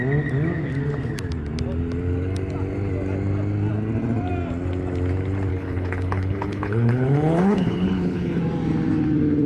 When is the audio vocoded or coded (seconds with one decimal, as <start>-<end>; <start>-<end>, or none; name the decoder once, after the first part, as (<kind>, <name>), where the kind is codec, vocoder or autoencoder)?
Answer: 5.5-8.4 (codec, HILCodec)